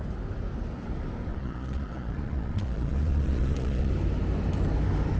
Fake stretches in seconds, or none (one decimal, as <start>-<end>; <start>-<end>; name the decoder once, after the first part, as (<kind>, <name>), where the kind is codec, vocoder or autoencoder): 1.3-3.9 (vocoder, Vocos)